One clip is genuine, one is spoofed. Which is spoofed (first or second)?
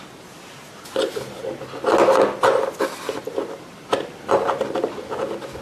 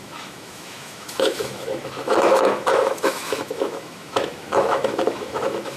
second